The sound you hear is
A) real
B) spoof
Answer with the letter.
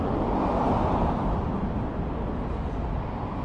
A